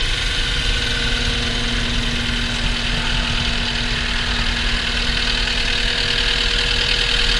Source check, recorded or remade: recorded